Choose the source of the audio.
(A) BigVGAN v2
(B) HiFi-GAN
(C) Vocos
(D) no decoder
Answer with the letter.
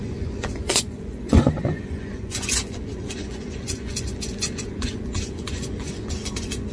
C